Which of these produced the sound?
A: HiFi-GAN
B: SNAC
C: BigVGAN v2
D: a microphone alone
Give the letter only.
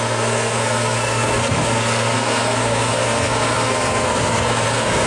B